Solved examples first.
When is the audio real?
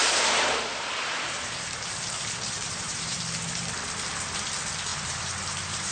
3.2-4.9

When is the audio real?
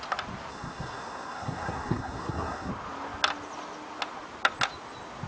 0.0-0.5; 2.7-5.3